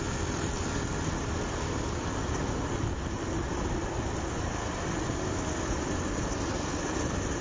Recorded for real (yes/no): yes